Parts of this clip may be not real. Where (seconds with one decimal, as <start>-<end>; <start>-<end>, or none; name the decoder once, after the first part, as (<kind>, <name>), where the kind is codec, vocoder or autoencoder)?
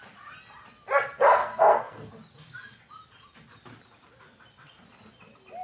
1.4-2.1 (codec, SNAC)